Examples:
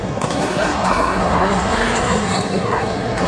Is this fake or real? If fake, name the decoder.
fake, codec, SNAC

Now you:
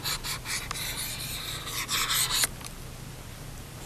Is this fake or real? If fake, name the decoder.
real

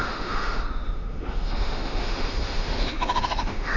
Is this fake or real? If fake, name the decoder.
fake, autoencoder, DAC-VAE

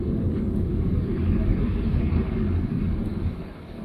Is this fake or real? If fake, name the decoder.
fake, codec, DAC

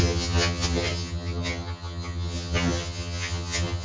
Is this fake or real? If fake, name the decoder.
fake, vocoder, HiFi-GAN